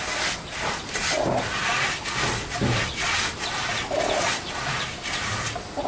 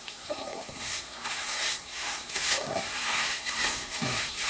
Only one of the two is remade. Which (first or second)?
second